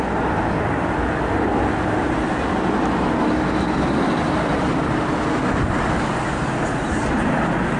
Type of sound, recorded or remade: recorded